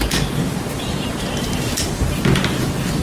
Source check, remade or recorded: recorded